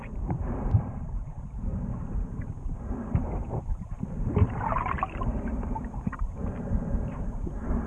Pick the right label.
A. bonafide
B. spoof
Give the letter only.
B